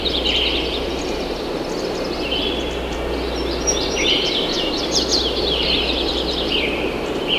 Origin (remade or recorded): remade